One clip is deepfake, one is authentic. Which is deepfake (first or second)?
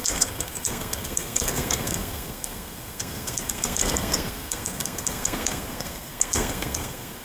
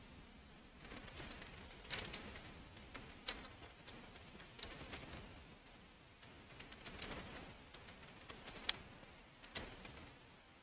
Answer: first